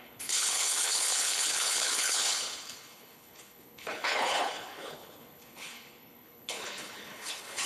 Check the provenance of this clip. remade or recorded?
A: remade